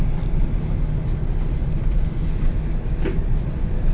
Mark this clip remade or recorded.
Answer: recorded